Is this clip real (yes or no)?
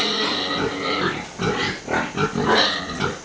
yes